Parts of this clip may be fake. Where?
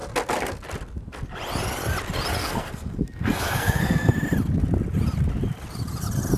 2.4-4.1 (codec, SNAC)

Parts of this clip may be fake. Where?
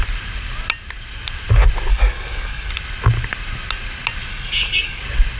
1.9-2.7 (codec, DAC); 4.3-5.0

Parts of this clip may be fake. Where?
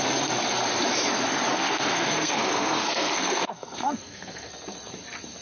1.5-4.5 (codec, SNAC)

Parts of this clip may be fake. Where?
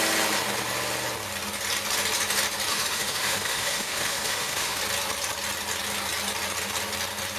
2.7-4.8 (autoencoder, DAC-VAE)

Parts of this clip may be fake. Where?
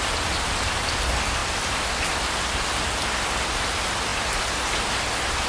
none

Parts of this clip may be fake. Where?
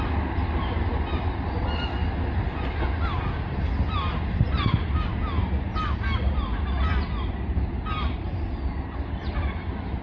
none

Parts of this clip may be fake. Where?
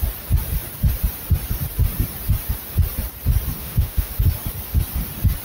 3.6-4.1 (autoencoder, DAC-VAE)